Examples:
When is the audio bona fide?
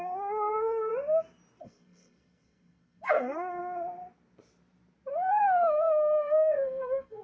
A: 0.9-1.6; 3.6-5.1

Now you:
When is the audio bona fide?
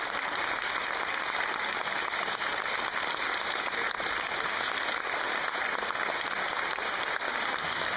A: 0.0-8.0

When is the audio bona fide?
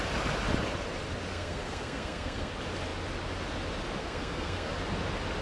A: 0.0-1.3; 2.5-4.0; 4.7-5.4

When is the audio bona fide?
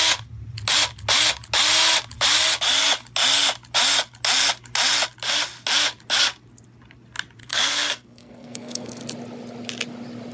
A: 0.0-7.4; 9.0-10.3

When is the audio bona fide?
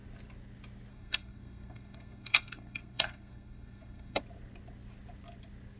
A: 0.0-0.9; 4.2-5.8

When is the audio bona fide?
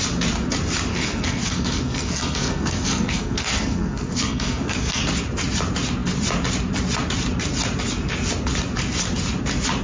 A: 0.0-0.9; 5.0-9.8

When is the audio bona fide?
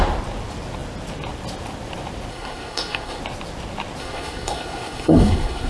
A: 0.0-2.3; 3.2-4.0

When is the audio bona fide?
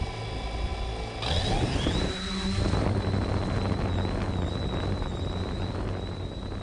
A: 0.0-6.6